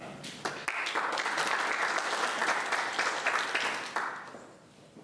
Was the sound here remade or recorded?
recorded